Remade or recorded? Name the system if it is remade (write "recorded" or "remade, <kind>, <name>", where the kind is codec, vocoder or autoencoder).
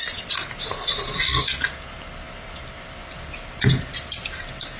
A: recorded